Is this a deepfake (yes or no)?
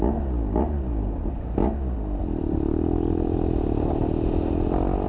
no